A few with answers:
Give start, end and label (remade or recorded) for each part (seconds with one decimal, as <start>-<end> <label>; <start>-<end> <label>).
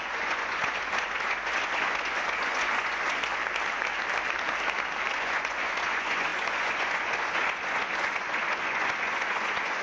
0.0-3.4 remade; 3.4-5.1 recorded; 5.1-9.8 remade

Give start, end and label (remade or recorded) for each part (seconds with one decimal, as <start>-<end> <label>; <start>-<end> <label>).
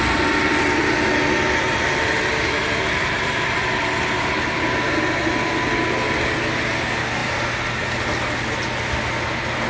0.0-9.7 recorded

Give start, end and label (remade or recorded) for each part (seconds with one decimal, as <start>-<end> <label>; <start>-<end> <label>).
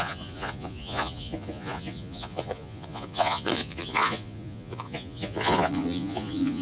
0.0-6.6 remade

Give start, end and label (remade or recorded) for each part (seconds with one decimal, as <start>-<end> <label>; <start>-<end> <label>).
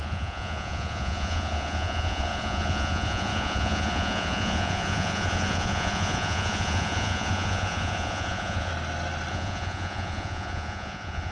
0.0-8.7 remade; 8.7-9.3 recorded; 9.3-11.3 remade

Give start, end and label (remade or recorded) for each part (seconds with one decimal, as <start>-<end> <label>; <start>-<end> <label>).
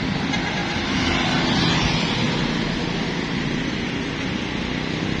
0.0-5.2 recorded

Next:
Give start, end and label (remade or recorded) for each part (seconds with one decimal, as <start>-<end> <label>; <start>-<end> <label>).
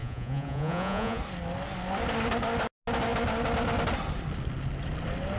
0.0-1.2 remade; 1.2-5.4 recorded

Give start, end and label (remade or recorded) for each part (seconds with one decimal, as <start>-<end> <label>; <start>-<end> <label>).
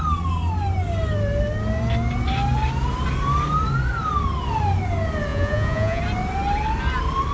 0.0-5.3 recorded; 5.3-6.0 remade; 6.0-7.3 recorded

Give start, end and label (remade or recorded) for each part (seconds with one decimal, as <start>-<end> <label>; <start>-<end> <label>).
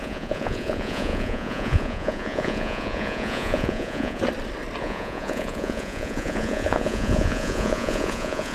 0.0-4.2 remade; 4.2-4.8 recorded; 4.8-8.5 remade